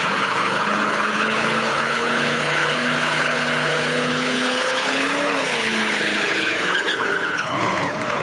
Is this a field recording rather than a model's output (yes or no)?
no